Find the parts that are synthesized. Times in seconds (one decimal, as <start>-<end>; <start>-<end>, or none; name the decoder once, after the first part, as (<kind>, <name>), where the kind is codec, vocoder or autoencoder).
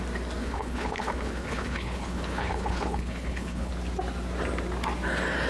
0.4-3.7 (codec, HILCodec)